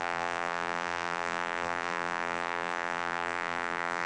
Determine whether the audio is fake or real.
fake